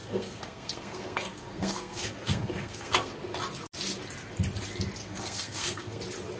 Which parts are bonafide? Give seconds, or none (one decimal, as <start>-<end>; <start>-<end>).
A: 3.1-5.0; 6.0-6.4